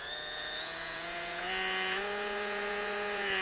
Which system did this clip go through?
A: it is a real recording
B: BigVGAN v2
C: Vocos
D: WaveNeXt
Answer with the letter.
C